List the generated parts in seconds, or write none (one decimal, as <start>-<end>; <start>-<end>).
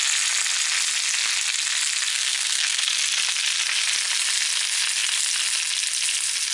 2.1-2.9